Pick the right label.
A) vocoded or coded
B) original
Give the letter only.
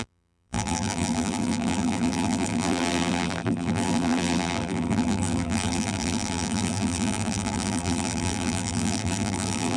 A